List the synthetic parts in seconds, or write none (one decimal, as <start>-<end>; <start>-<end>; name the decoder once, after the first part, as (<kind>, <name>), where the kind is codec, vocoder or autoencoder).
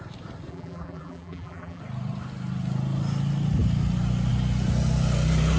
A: 0.5-1.8 (vocoder, BigVGAN v2)